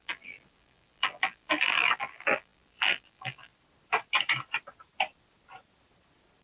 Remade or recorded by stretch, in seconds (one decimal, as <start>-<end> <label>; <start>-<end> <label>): 0.0-3.5 remade; 3.5-6.4 recorded